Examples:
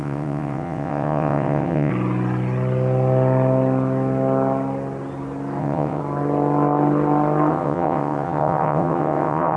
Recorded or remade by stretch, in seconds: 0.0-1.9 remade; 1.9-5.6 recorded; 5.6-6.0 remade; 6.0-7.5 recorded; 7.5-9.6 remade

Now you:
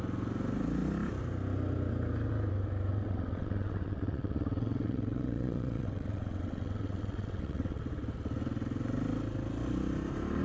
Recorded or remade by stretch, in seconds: 0.0-2.9 recorded; 2.9-7.8 remade; 7.8-10.4 recorded

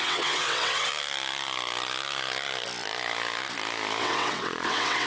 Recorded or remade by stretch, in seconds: 0.0-0.9 remade; 0.9-4.0 recorded; 4.0-5.1 remade